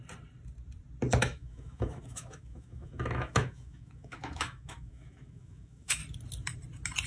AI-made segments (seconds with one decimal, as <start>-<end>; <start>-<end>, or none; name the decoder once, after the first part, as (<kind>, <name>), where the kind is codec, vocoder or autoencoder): 1.2-6.0 (autoencoder, DAC-VAE)